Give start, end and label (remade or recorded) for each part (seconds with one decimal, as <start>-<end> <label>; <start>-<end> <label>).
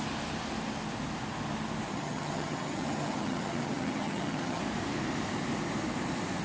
0.0-1.9 recorded; 1.9-4.6 remade; 4.6-6.4 recorded